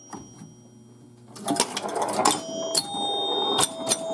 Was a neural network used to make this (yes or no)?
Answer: no